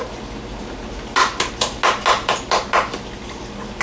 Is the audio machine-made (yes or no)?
no